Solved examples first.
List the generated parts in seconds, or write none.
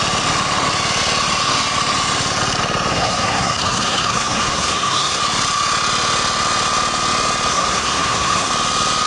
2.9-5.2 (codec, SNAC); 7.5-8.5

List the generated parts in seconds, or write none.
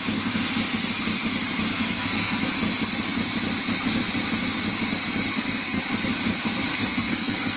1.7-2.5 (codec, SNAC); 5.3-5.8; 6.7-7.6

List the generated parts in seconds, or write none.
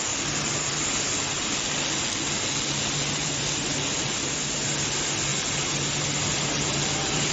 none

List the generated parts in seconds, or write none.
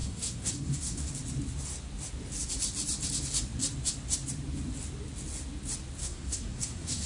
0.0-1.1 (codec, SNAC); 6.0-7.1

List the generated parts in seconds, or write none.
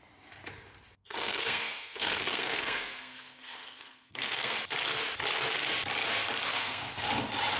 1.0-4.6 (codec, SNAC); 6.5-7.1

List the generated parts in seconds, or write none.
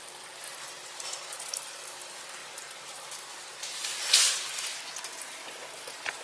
none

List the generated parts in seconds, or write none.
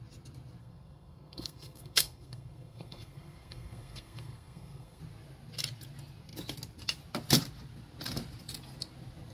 0.6-5.0 (codec, SNAC)